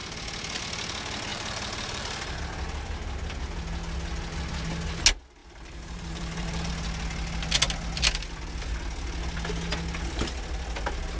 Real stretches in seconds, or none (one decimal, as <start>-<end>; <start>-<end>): 0.0-1.3; 2.4-5.4; 6.7-11.2